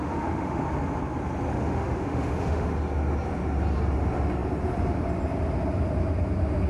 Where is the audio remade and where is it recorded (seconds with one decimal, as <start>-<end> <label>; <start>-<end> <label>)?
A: 0.0-0.6 remade; 0.6-1.5 recorded; 1.5-2.7 remade; 2.7-6.7 recorded